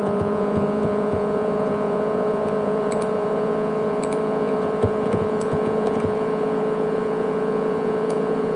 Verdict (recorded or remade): remade